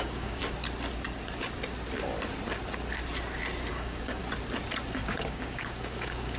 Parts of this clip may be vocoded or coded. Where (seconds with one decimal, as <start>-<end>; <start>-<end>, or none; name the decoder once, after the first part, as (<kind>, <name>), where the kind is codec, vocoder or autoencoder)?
0.0-0.4 (codec, DAC); 3.7-4.2; 5.0-6.4